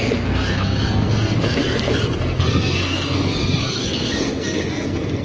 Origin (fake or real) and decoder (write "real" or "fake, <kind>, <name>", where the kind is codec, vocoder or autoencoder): fake, codec, SNAC